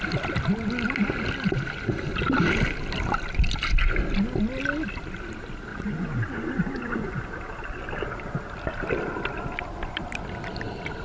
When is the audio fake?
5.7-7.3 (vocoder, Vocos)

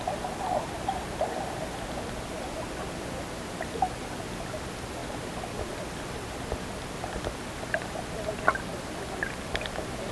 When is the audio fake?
none

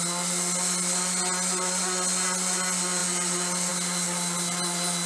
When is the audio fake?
none

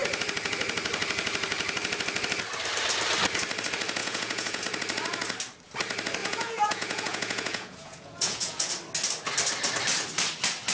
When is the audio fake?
4.0-4.6 (vocoder, Vocos); 6.2-8.7

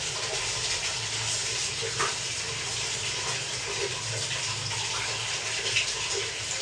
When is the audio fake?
none

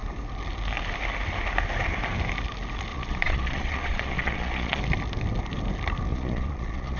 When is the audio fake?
2.9-4.8 (vocoder, Vocos); 6.1-7.0

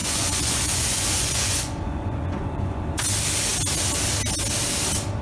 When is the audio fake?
0.0-2.8 (vocoder, Vocos)

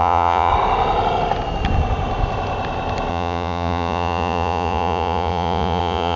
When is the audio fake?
0.0-0.5 (vocoder, Vocos); 3.1-6.2